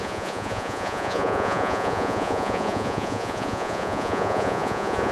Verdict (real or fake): fake